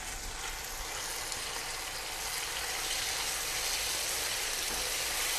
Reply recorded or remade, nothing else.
recorded